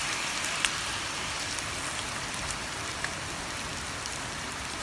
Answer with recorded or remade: remade